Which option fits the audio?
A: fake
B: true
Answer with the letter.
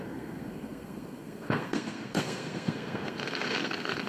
A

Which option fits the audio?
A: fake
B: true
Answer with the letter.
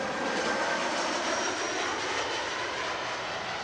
B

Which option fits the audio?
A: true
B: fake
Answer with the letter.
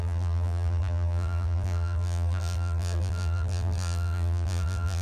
B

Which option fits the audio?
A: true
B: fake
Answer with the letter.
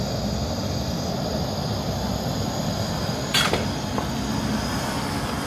A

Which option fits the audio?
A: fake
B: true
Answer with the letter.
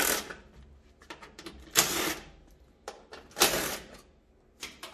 B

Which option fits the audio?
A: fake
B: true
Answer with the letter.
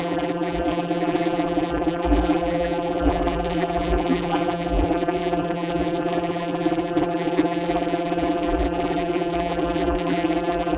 A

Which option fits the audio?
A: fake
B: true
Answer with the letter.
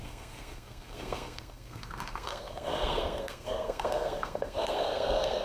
A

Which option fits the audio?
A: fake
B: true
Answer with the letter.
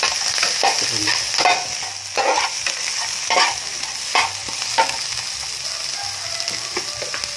B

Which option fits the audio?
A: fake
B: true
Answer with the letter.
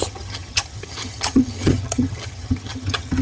A